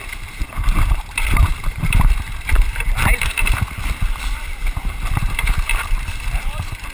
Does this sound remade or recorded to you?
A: remade